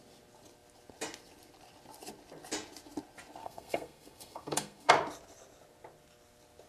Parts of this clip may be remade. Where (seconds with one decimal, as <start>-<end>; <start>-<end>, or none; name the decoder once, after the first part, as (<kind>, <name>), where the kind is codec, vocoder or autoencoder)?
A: 3.4-4.9 (codec, SNAC)